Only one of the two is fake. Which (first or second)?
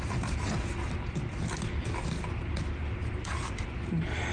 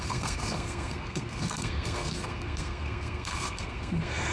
second